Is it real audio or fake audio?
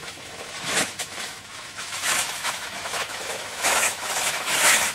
fake